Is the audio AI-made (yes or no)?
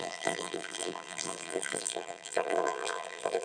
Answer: yes